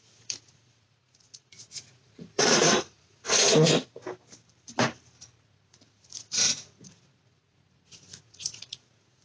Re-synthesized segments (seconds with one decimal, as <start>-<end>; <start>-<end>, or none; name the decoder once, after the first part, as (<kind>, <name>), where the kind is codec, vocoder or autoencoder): 0.0-4.0 (vocoder, Vocos); 5.4-9.2